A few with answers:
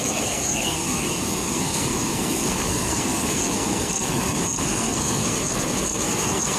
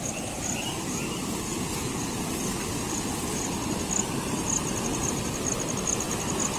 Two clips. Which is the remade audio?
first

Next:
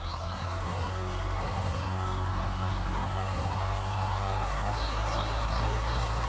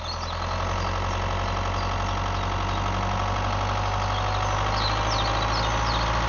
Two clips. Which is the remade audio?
first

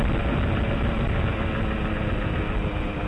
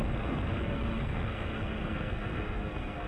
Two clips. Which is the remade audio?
second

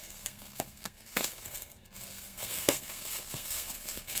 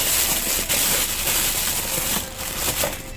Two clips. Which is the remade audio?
first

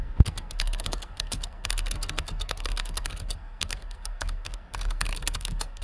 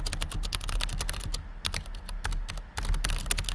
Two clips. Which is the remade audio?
first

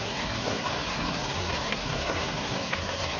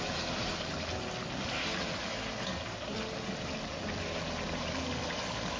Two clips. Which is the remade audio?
first